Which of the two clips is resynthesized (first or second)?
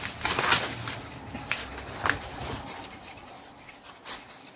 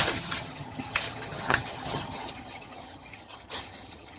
second